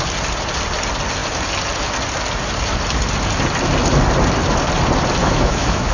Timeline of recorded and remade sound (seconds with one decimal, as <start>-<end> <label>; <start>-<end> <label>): 0.0-5.2 recorded; 5.2-5.9 remade